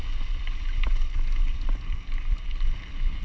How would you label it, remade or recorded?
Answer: recorded